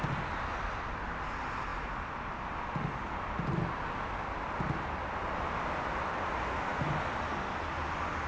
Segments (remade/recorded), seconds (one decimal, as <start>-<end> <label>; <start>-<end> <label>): 0.0-8.3 recorded

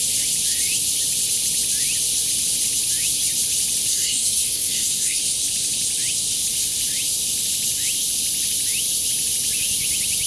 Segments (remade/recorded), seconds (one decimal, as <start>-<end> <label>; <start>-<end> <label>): 0.0-3.9 recorded; 3.9-5.2 remade; 5.2-10.3 recorded

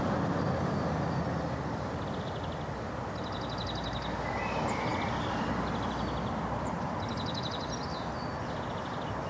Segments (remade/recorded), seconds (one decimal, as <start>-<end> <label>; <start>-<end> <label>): 0.0-9.3 recorded

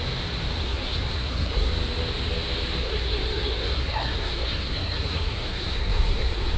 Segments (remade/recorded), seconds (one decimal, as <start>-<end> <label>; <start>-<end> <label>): 0.0-0.6 recorded; 0.6-1.7 remade; 1.7-2.8 recorded; 2.8-6.6 remade

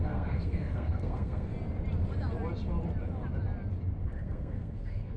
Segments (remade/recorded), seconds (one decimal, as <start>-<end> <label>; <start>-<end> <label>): 0.0-1.5 remade; 1.5-4.0 recorded; 4.0-5.2 remade

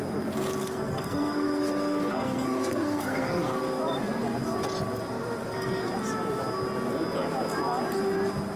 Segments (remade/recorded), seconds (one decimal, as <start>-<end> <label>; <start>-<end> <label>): 0.0-0.6 recorded; 0.6-3.6 remade; 3.6-5.4 recorded; 5.4-5.9 remade; 5.9-8.6 recorded

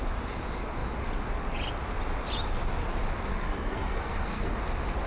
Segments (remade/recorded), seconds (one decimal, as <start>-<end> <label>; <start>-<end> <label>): 0.0-3.3 recorded; 3.3-4.6 remade; 4.6-5.1 recorded

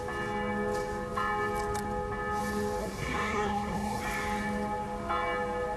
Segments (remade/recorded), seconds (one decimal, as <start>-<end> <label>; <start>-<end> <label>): 0.0-2.8 recorded; 2.8-4.0 remade; 4.0-5.8 recorded